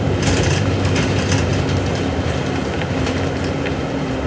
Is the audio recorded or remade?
remade